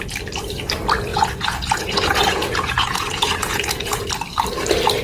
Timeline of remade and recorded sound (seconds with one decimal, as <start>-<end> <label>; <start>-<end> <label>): 0.0-1.1 recorded; 1.1-4.1 remade; 4.1-5.0 recorded